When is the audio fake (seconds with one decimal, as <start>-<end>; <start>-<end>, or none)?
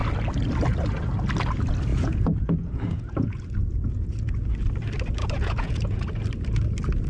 1.9-3.4; 5.2-6.0